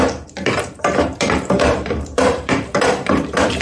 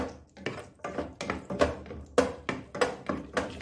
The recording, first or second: second